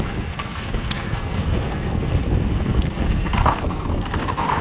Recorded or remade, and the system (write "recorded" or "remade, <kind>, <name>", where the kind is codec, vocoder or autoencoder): remade, codec, SNAC